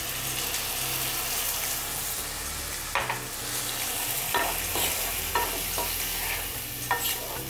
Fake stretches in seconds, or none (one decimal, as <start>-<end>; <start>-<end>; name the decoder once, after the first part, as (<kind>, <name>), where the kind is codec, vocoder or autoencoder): 4.7-5.3 (vocoder, BigVGAN v2)